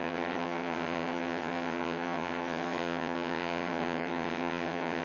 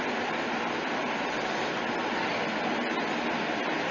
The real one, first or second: second